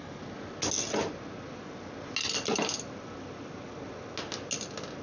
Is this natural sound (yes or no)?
yes